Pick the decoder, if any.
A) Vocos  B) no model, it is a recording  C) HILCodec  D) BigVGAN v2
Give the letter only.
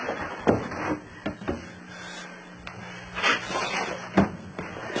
B